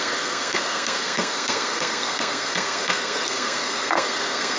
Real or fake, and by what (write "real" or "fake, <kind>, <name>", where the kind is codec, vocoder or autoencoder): fake, codec, SNAC